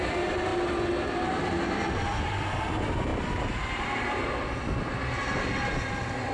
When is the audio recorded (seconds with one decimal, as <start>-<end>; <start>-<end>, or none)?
0.0-6.3